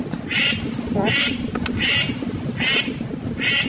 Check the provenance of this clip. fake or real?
real